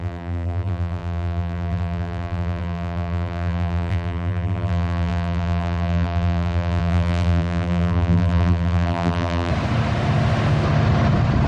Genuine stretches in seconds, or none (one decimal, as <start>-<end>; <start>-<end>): 9.5-11.5